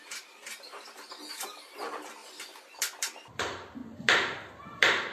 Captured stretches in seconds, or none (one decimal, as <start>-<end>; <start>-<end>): 3.8-4.5